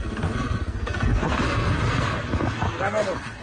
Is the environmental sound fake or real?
fake